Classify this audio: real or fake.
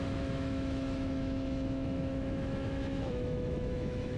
fake